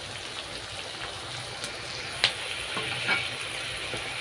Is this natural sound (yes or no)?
yes